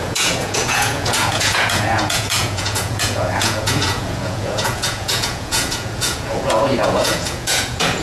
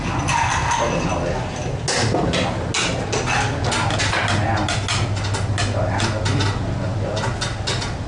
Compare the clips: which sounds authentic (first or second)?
second